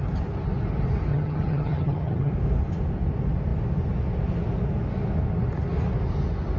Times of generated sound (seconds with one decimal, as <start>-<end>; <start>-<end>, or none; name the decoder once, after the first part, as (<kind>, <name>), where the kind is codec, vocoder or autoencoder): 1.1-2.3 (vocoder, HiFi-GAN)